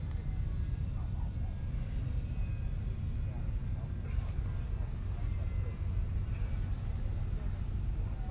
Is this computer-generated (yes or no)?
no